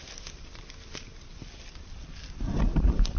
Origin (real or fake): real